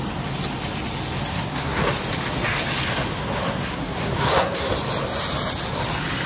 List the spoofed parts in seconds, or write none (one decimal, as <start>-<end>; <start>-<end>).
1.3-1.8; 3.2-4.7